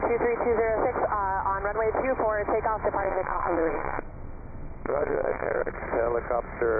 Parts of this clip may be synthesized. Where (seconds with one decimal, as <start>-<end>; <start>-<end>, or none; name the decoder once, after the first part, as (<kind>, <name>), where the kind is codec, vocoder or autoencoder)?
3.0-5.7 (vocoder, WaveNeXt)